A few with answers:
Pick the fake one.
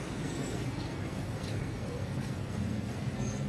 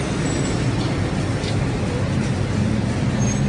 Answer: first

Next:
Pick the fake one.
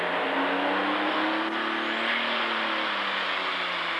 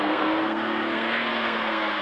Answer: second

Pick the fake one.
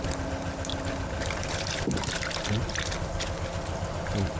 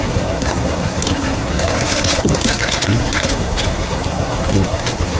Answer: second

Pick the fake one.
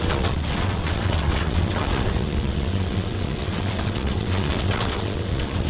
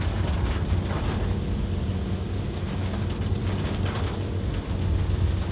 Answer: first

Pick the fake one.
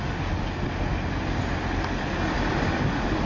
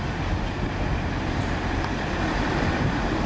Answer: second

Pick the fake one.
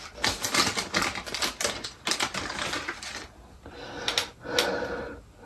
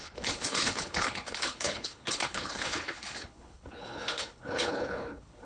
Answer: second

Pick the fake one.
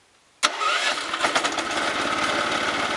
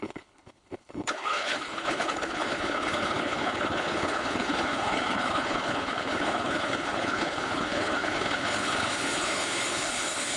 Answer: second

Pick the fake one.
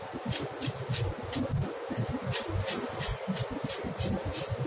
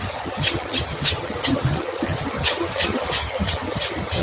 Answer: second